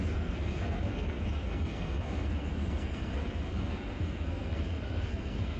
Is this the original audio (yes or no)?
no